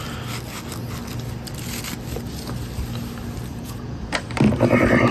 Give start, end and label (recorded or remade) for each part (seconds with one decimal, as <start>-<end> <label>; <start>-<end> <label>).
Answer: 0.0-3.5 recorded; 3.5-4.0 remade; 4.0-5.1 recorded